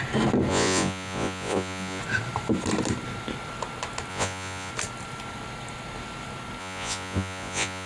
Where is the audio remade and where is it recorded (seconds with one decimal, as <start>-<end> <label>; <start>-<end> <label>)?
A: 0.0-0.5 recorded; 0.5-2.0 remade; 2.0-4.1 recorded; 4.1-4.7 remade; 4.7-6.6 recorded; 6.6-7.9 remade